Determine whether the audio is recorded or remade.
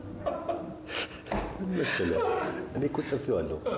recorded